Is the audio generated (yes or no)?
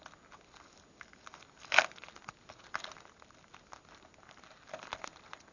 no